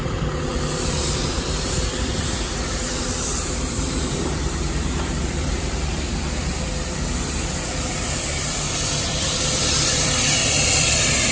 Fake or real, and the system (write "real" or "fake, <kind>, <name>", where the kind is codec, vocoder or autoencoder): fake, vocoder, BigVGAN v2